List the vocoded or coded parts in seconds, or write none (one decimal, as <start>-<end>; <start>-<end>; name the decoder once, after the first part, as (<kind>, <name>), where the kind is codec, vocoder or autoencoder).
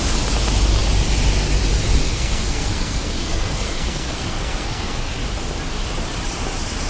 2.1-5.1 (codec, SNAC)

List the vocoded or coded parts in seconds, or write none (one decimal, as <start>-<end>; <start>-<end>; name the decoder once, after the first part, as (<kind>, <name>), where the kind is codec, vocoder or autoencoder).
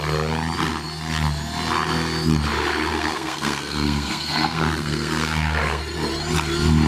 2.9-5.8 (codec, SNAC)